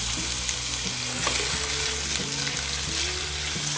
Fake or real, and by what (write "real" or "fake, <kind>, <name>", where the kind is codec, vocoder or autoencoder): real